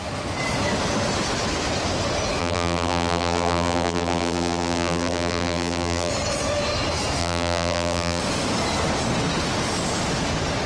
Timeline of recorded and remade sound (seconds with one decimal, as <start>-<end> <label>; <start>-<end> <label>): 0.0-2.4 recorded; 2.4-6.1 remade; 6.1-7.2 recorded; 7.2-8.2 remade; 8.2-10.7 recorded